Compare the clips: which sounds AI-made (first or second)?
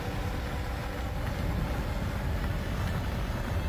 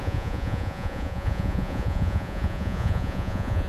second